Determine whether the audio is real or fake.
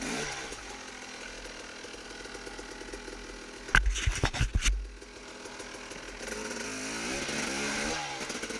real